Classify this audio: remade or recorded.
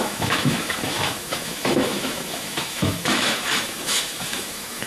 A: remade